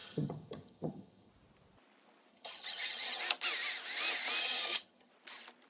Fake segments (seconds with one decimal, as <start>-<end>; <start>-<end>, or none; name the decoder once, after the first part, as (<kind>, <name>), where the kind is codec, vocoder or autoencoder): 0.0-1.3 (vocoder, HiFi-GAN); 2.3-3.2; 4.4-5.1